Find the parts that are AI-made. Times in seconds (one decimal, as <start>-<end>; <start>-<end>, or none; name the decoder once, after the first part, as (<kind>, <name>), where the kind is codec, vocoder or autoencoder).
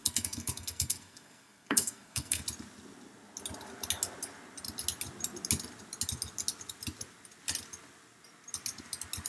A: 0.0-2.4 (codec, SNAC)